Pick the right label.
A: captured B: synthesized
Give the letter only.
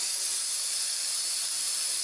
B